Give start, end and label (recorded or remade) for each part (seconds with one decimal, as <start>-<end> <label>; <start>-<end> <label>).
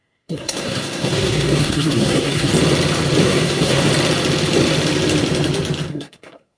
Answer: 0.0-2.5 remade; 2.5-3.2 recorded; 3.2-3.9 remade; 3.9-5.9 recorded; 5.9-6.6 remade